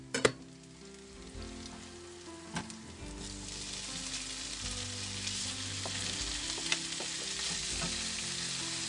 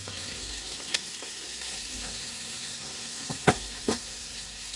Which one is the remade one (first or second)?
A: second